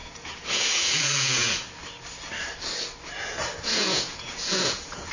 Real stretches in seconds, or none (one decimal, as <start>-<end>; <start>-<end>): 1.8-3.7